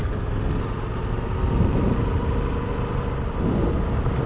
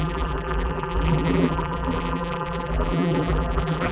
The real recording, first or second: first